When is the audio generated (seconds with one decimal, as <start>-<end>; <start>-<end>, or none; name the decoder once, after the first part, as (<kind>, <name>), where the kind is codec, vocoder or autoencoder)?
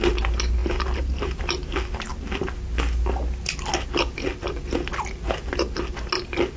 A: none